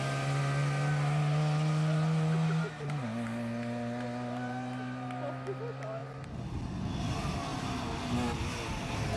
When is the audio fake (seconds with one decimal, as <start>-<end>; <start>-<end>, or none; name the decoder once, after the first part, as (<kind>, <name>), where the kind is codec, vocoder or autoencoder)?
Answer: none